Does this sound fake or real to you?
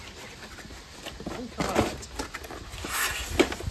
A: real